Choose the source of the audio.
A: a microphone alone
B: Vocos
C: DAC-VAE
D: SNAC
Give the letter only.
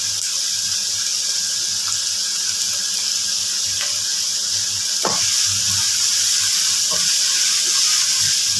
A